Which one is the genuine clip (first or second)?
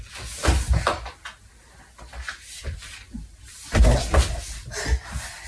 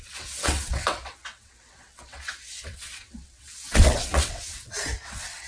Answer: first